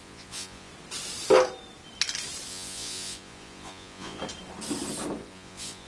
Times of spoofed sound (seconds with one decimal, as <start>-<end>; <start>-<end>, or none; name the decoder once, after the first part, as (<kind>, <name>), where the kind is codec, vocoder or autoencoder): 0.0-0.7 (vocoder, Vocos); 2.5-4.2; 5.2-5.9